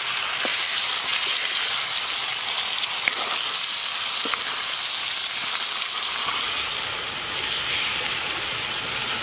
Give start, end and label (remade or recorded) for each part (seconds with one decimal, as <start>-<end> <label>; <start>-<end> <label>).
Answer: 0.0-9.2 recorded